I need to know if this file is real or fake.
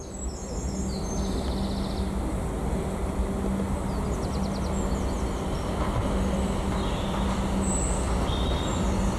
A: real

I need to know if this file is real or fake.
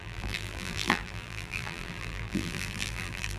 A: fake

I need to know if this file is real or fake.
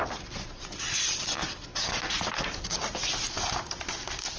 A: real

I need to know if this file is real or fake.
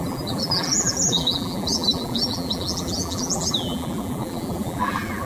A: fake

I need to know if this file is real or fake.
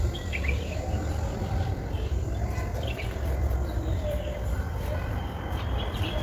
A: fake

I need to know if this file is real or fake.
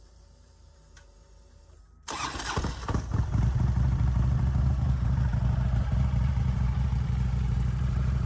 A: fake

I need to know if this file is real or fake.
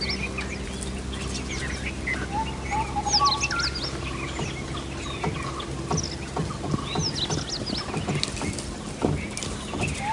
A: real